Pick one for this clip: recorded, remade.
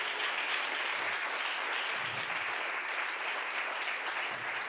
recorded